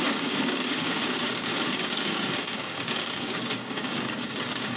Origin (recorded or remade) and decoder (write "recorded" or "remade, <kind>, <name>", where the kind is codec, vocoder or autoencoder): remade, codec, DAC